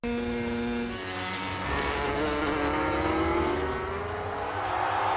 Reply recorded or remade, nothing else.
recorded